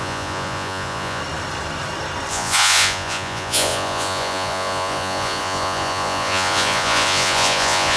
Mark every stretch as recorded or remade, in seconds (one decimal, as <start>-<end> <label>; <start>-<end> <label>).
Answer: 0.0-1.2 remade; 1.2-2.3 recorded; 2.3-8.0 remade